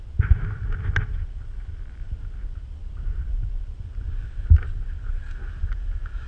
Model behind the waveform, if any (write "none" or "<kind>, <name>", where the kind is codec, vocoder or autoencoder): none